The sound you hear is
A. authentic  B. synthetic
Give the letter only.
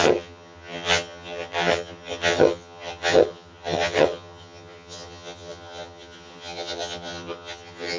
B